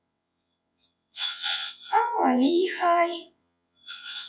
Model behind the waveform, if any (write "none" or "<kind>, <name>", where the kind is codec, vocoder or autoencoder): vocoder, WaveNeXt